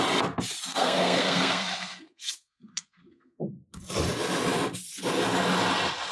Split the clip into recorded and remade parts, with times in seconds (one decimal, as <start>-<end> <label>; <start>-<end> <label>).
0.0-0.7 recorded; 0.7-3.8 remade; 3.8-6.1 recorded